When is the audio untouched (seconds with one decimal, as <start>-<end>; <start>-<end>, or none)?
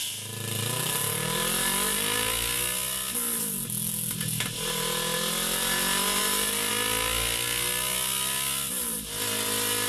0.0-9.9